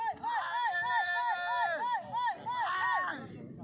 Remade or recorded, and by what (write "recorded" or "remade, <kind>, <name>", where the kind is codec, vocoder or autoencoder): recorded